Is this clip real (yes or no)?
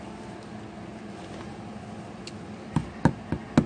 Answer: yes